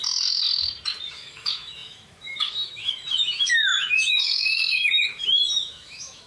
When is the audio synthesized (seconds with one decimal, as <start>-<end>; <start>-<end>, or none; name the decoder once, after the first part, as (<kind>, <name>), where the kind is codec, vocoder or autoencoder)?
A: 1.1-6.3 (autoencoder, DAC-VAE)